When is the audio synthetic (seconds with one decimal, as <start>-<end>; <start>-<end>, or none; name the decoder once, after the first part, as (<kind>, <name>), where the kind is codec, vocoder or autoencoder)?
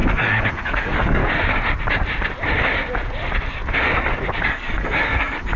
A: 0.0-1.2 (codec, DAC); 4.4-5.6